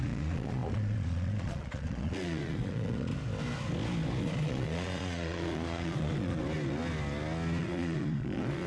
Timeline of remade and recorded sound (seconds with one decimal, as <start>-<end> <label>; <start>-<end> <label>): 0.0-3.1 remade; 3.1-4.2 recorded; 4.2-6.4 remade; 6.4-7.6 recorded; 7.6-8.7 remade